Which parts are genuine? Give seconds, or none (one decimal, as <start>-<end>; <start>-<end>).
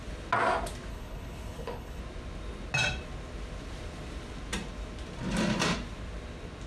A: 0.0-0.9; 2.0-6.7